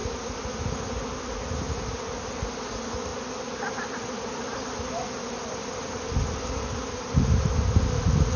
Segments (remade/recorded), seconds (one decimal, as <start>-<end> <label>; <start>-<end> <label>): 0.0-8.4 recorded